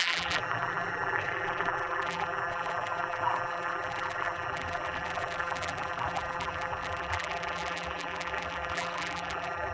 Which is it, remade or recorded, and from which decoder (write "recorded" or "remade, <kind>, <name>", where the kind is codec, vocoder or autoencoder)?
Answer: remade, vocoder, BigVGAN v2